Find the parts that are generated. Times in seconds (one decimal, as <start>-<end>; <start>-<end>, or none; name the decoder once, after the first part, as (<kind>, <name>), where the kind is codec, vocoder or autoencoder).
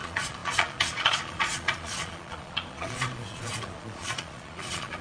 0.0-5.0 (vocoder, Vocos)